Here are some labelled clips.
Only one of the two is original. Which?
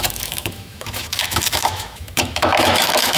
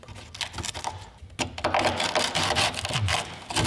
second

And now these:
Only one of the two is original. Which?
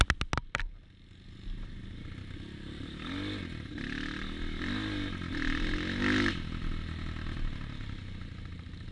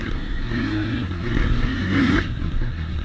first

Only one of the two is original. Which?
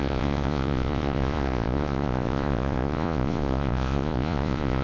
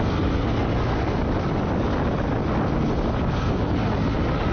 second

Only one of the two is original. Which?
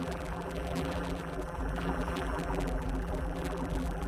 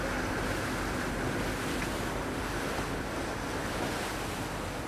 second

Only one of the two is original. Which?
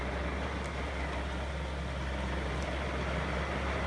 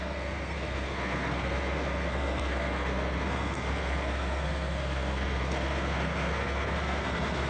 first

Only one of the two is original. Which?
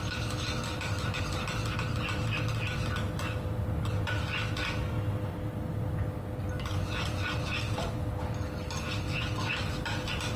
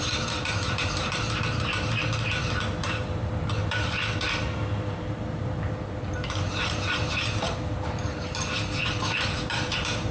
first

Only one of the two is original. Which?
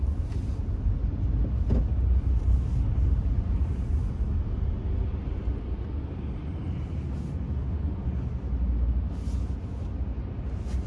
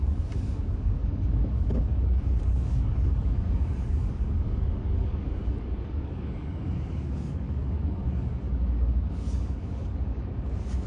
first